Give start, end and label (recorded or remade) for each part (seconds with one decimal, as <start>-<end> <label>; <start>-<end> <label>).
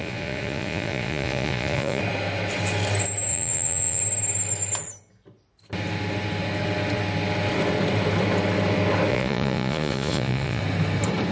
0.0-2.0 remade; 2.0-3.3 recorded; 3.3-4.0 remade; 4.0-9.1 recorded; 9.1-10.6 remade; 10.6-11.3 recorded